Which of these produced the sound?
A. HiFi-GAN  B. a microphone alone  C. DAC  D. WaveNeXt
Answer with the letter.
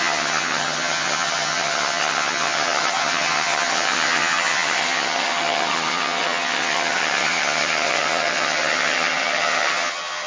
A